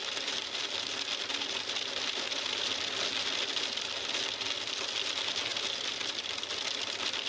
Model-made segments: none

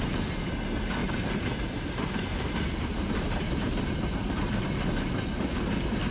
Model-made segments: 1.0-4.7 (vocoder, BigVGAN v2)

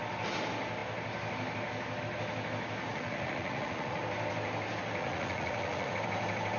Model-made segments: 2.9-4.0 (vocoder, Vocos); 5.0-5.9